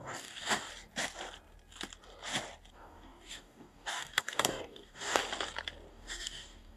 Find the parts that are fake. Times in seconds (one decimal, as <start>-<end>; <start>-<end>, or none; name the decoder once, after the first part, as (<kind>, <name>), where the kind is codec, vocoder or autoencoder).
0.0-0.7 (codec, DAC); 2.7-5.2; 5.9-6.8